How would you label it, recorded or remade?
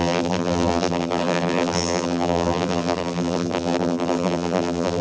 remade